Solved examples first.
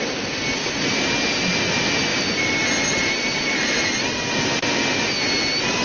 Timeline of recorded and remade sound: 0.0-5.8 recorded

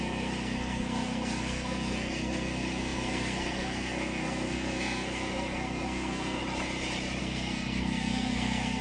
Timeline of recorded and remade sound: 0.0-6.4 remade; 6.4-7.2 recorded; 7.2-8.8 remade

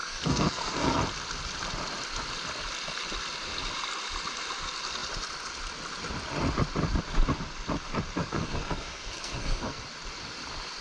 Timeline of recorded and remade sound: 0.0-1.0 remade; 1.0-8.2 recorded; 8.2-9.8 remade; 9.8-10.8 recorded

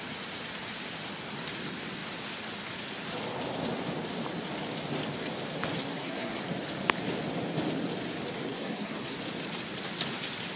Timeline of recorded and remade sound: 0.0-5.9 recorded; 5.9-6.4 remade; 6.4-8.5 recorded; 8.5-9.2 remade; 9.2-10.6 recorded

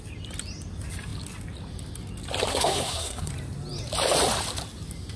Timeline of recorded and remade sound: 0.0-2.5 recorded; 2.5-3.3 remade; 3.3-5.2 recorded

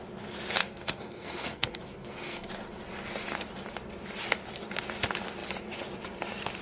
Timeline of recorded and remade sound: 0.0-0.6 recorded; 0.6-2.5 remade; 2.5-6.6 recorded

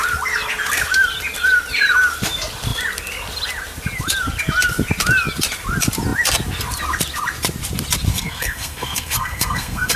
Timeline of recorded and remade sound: 0.0-8.1 recorded; 8.1-10.0 remade

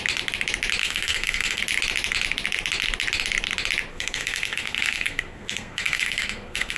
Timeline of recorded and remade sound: 0.0-0.8 recorded; 0.8-1.6 remade; 1.6-3.9 recorded; 3.9-6.8 remade